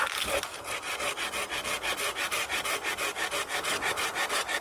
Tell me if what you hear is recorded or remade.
recorded